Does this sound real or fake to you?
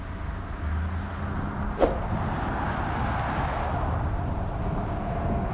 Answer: real